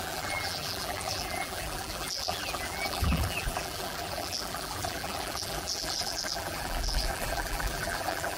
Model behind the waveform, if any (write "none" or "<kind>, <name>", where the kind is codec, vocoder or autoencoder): vocoder, BigVGAN v2